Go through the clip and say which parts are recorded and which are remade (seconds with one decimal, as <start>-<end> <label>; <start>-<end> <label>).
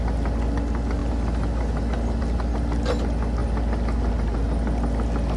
0.0-5.4 recorded